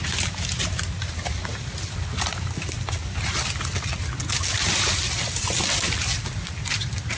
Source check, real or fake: real